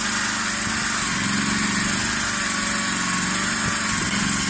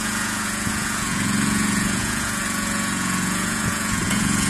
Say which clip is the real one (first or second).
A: first